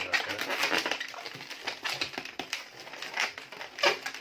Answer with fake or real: fake